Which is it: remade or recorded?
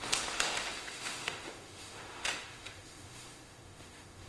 remade